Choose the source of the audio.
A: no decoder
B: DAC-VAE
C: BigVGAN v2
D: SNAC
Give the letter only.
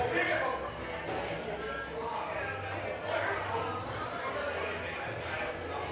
A